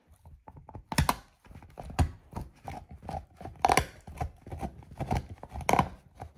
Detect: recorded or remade recorded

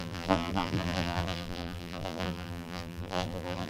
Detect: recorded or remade remade